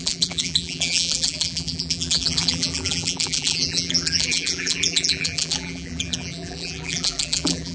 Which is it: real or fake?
fake